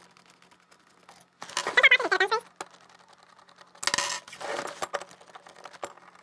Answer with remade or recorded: recorded